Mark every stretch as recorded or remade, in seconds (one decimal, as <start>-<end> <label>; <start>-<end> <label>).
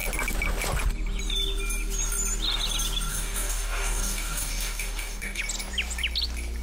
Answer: 0.0-3.1 recorded; 3.1-5.4 remade; 5.4-6.6 recorded